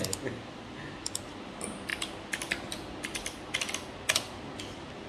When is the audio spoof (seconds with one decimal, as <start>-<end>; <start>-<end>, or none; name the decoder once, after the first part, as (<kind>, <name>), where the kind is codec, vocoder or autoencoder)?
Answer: none

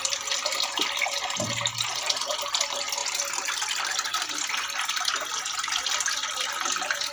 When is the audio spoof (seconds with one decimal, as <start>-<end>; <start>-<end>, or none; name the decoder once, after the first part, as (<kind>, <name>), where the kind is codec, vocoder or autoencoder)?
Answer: none

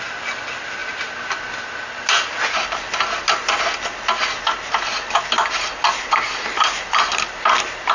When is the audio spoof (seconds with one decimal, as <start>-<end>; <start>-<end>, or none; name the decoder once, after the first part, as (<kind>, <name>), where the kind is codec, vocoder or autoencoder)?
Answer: none

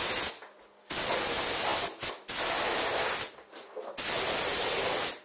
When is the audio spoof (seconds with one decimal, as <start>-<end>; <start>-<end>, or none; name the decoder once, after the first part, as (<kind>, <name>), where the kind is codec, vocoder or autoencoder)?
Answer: none

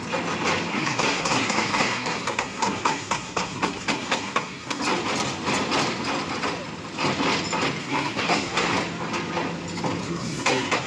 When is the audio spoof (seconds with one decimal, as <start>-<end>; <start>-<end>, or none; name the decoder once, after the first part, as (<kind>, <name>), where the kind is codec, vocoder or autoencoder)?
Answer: 0.7-4.8 (codec, SNAC); 7.8-8.7; 10.0-10.9

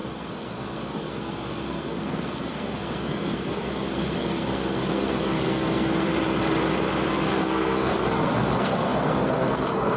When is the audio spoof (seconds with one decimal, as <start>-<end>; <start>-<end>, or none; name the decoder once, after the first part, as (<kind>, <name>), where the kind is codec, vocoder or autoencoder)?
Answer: 0.0-6.1 (codec, SNAC); 7.1-10.0

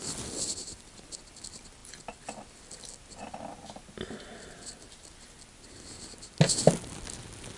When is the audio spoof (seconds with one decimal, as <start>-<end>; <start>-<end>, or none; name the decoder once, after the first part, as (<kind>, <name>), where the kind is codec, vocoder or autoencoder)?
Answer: none

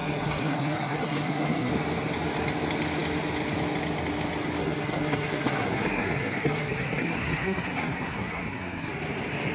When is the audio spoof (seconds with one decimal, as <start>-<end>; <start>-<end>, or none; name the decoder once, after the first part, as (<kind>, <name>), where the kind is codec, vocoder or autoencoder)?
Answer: 0.0-1.7 (codec, SNAC); 4.6-8.9